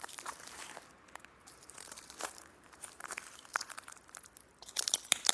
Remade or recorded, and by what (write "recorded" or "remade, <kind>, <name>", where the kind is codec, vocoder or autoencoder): remade, vocoder, BigVGAN v2